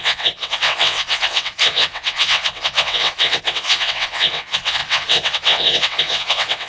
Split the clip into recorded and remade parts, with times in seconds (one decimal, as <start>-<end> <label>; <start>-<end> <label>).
0.0-6.7 remade

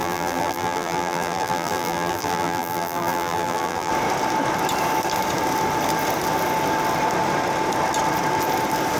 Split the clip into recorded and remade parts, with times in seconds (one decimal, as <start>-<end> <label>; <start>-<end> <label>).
0.0-3.9 remade; 3.9-9.0 recorded

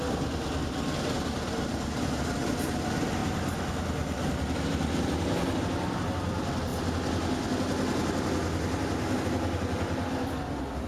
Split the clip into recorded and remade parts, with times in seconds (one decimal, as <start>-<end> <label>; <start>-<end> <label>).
0.0-10.9 recorded

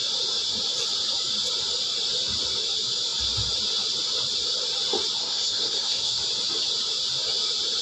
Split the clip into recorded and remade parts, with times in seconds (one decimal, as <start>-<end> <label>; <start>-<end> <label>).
0.0-5.2 recorded; 5.2-6.2 remade; 6.2-7.8 recorded

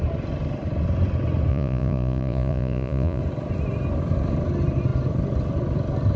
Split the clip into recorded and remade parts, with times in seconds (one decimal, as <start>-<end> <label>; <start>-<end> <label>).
0.0-1.5 recorded; 1.5-3.2 remade; 3.2-6.2 recorded

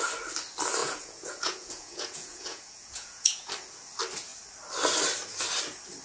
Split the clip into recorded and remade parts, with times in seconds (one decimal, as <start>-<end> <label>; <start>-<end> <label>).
0.0-0.8 recorded; 0.8-3.5 remade; 3.5-6.0 recorded